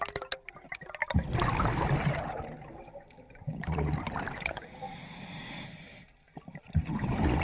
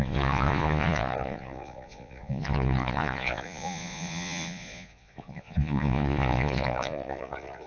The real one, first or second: first